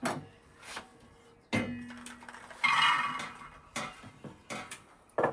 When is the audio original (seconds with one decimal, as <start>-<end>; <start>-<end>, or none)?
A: 0.0-5.3